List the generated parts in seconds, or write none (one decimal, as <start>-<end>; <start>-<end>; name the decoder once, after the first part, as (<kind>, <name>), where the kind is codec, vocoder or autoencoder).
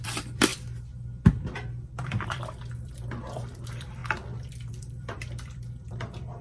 0.0-0.5 (vocoder, BigVGAN v2); 2.0-4.0; 4.7-6.4